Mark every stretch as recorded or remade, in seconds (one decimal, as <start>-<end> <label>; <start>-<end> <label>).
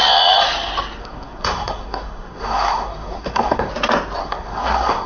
0.0-1.0 recorded; 1.0-3.7 remade; 3.7-4.2 recorded; 4.2-5.1 remade